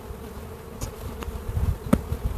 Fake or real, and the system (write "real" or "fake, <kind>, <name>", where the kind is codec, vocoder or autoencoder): fake, vocoder, BigVGAN v2